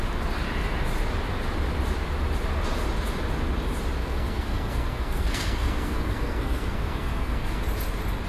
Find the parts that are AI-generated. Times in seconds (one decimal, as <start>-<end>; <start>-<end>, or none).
4.0-7.6

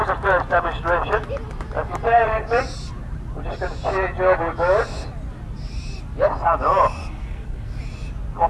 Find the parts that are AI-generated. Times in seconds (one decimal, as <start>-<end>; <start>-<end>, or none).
7.0-7.8

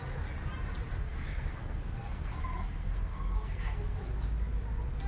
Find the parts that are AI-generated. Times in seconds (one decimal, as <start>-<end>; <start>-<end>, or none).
0.9-4.0

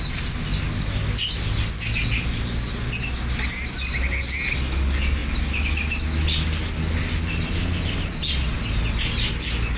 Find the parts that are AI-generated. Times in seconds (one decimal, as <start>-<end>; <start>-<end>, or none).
none

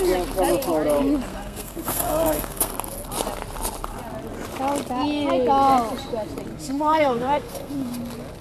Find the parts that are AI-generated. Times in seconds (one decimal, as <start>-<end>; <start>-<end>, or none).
1.3-2.7; 6.5-8.0

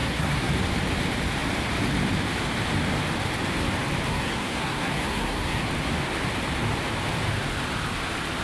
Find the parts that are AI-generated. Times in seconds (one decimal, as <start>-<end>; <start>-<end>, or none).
0.0-0.5; 4.1-5.7

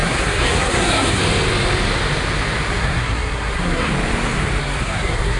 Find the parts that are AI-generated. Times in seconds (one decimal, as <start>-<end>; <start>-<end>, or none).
0.0-1.2; 2.7-3.9; 4.6-5.4

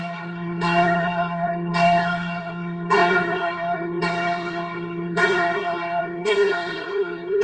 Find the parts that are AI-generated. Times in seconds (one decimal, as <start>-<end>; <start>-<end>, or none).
0.0-7.4